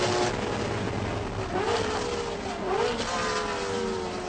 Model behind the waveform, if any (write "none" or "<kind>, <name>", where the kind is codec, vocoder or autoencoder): none